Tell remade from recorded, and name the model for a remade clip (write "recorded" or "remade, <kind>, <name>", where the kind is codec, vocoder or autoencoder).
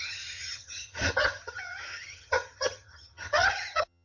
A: remade, vocoder, HiFi-GAN